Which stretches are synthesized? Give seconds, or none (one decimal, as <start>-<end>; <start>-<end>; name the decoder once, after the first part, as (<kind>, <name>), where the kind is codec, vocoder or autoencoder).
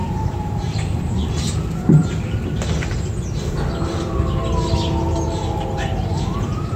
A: 0.0-1.3 (vocoder, BigVGAN v2)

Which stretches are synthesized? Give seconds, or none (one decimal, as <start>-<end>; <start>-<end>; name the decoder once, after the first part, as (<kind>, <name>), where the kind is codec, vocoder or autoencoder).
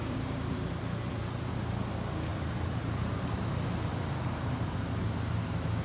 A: 0.0-0.7 (vocoder, BigVGAN v2); 2.3-3.5; 3.9-5.0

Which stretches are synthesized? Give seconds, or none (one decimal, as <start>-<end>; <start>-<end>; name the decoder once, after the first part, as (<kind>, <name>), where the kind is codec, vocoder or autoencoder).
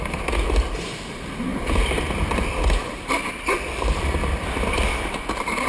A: 1.5-2.0 (vocoder, BigVGAN v2); 4.2-5.7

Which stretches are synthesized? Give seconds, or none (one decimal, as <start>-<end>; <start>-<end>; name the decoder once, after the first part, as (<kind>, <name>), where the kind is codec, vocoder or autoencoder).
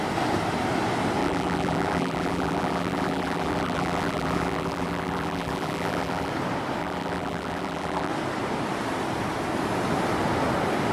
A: 1.2-6.3 (vocoder, BigVGAN v2); 6.8-8.1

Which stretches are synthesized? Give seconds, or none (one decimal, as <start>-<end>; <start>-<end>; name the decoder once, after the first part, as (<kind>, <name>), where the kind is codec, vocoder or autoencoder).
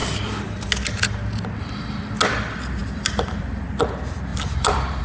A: 2.8-3.5 (vocoder, BigVGAN v2); 4.3-5.0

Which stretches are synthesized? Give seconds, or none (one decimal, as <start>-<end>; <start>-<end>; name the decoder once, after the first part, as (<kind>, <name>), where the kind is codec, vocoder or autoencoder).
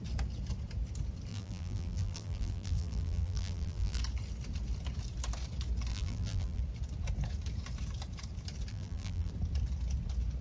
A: 1.3-4.0 (vocoder, BigVGAN v2); 5.9-6.6; 8.7-9.3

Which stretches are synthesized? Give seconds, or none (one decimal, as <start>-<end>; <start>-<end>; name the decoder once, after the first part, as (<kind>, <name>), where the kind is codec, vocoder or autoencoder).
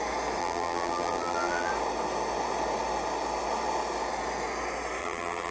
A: 0.4-1.7 (vocoder, BigVGAN v2); 5.0-5.5